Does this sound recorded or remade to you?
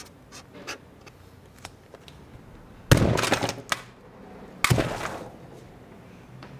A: recorded